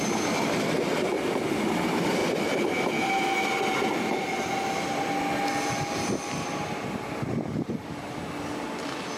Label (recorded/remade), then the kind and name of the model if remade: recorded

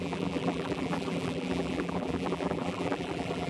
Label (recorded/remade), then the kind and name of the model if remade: remade, vocoder, BigVGAN v2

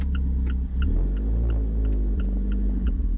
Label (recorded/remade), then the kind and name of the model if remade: recorded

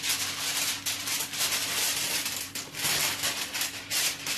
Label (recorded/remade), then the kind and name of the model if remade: remade, vocoder, BigVGAN v2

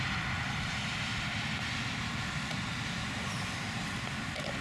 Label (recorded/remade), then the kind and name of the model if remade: recorded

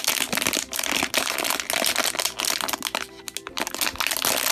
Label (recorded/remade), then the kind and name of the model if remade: recorded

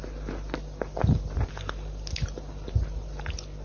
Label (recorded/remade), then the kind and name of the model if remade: recorded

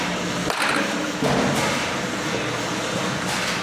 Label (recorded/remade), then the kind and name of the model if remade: recorded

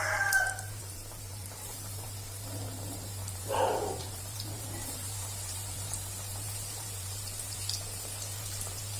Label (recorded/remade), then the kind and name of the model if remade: remade, vocoder, BigVGAN v2